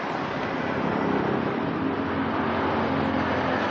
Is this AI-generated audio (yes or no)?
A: no